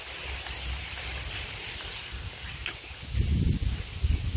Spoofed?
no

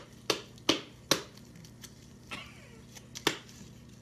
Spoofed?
no